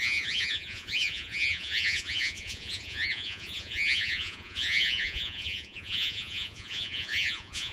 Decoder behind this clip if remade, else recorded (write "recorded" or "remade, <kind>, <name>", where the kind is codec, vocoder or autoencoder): remade, vocoder, Vocos